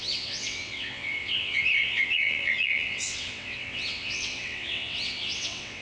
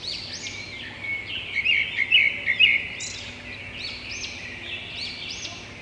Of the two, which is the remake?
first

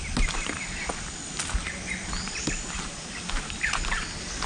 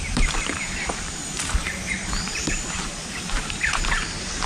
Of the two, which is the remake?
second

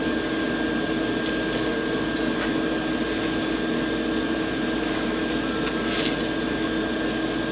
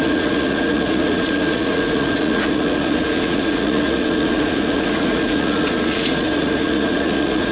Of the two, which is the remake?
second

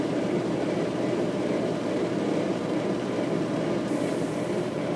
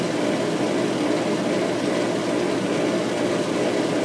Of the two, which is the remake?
first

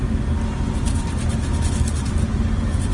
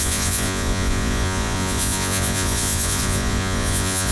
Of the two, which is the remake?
second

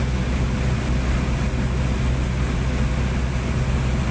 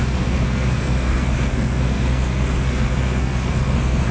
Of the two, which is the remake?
second